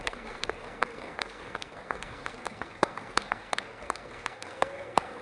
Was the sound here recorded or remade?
remade